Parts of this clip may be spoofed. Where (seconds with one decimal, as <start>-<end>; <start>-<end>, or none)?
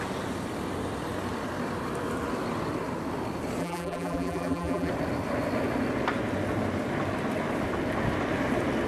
3.6-4.9